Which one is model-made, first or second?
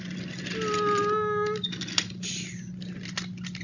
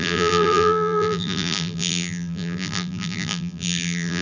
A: second